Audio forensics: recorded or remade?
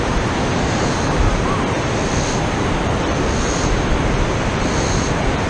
recorded